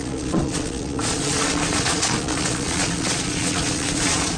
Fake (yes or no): yes